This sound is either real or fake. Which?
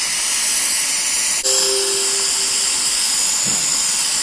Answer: real